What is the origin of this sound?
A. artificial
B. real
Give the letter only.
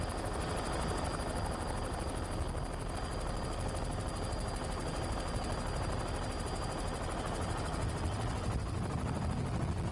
B